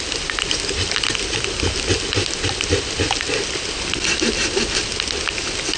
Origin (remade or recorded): recorded